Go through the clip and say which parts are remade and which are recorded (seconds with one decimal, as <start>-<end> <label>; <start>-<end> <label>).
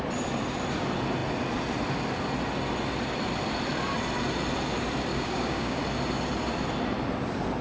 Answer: 0.0-5.1 recorded; 5.1-5.8 remade; 5.8-7.6 recorded